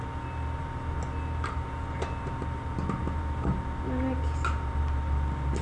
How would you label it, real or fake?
real